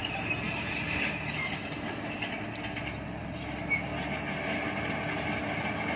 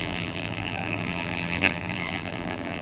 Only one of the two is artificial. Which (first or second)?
second